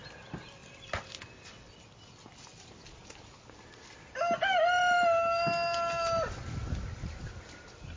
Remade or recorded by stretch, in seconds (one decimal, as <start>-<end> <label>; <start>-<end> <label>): 0.0-8.0 recorded